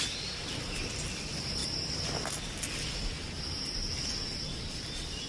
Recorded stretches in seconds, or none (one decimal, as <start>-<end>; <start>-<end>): 0.0-5.3